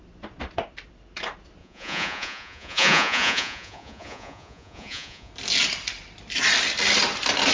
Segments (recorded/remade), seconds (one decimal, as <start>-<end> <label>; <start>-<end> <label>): 0.0-1.6 recorded; 1.6-5.3 remade; 5.3-7.5 recorded